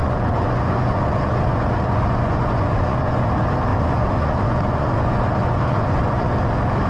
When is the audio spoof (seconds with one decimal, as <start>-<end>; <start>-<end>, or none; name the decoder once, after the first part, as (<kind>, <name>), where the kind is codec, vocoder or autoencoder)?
0.0-3.3 (vocoder, Vocos); 3.7-6.3